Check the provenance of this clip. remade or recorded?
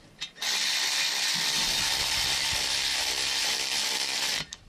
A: remade